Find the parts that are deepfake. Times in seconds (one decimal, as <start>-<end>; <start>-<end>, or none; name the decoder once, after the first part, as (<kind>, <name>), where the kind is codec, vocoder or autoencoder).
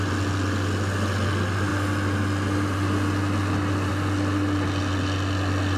none